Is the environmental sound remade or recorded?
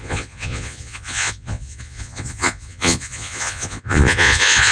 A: remade